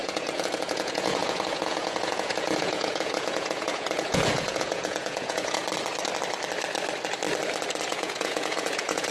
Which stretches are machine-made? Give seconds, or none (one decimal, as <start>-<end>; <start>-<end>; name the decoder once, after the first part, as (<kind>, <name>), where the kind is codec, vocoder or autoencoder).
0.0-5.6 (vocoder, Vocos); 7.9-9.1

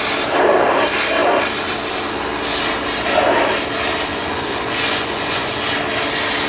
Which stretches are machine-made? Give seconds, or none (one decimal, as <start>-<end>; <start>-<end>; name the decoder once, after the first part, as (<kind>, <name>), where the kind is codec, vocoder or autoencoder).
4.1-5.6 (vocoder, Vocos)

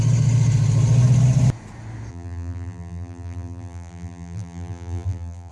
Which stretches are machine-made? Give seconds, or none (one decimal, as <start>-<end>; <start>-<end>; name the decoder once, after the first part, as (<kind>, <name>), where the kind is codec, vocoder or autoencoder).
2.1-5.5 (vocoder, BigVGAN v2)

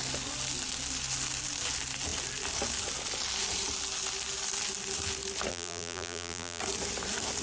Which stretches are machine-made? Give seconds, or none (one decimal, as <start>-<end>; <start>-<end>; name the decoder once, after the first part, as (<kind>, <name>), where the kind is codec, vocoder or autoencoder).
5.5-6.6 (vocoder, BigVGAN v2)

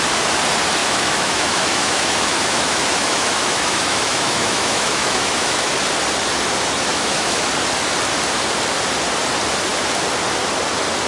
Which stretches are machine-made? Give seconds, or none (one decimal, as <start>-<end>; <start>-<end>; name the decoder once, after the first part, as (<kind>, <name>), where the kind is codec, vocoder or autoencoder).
0.8-5.7 (autoencoder, DAC-VAE); 6.9-7.5